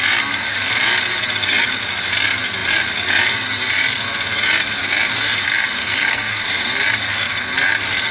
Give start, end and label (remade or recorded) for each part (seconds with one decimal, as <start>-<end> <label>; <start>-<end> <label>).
0.0-5.8 recorded; 5.8-6.4 remade; 6.4-8.1 recorded